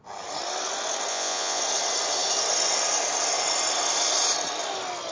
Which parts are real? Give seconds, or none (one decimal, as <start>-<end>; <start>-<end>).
0.0-1.1; 1.6-5.1